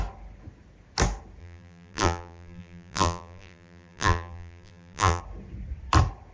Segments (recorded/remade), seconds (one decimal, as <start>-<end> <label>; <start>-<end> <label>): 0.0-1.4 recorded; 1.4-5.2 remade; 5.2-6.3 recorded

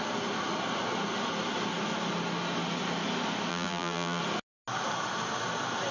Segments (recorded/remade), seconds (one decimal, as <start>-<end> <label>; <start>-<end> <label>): 0.0-3.5 recorded; 3.5-4.2 remade; 4.2-5.9 recorded

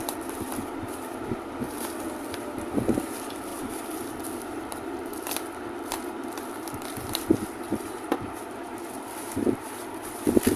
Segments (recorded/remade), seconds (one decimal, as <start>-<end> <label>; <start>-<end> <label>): 0.0-10.6 remade